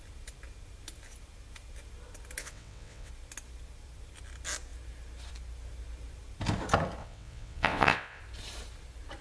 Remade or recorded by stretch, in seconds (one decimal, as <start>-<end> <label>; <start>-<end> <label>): 0.0-2.4 recorded; 2.4-3.1 remade; 3.1-7.0 recorded; 7.0-8.2 remade; 8.2-9.2 recorded